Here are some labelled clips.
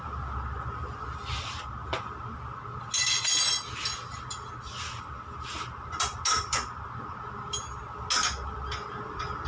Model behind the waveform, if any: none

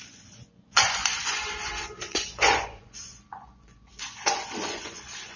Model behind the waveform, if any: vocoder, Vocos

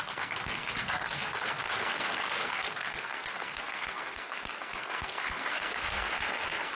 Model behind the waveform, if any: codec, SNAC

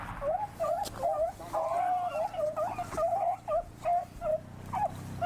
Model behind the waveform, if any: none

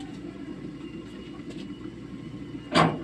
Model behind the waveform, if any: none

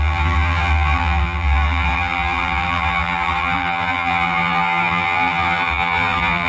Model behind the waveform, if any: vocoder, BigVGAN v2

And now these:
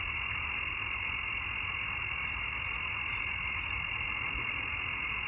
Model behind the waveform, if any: none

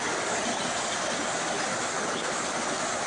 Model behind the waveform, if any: none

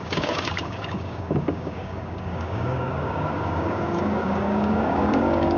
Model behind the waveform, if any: codec, DAC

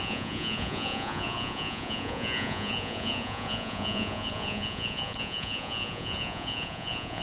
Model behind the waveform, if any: vocoder, Vocos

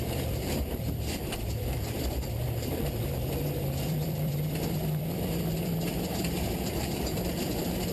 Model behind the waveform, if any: vocoder, BigVGAN v2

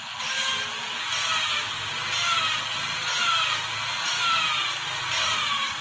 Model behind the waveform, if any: none